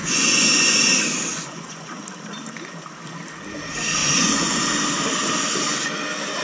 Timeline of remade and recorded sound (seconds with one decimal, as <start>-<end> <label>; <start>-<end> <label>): 0.0-0.8 remade; 0.8-1.3 recorded; 1.3-2.0 remade; 2.0-4.0 recorded; 4.0-4.7 remade; 4.7-6.4 recorded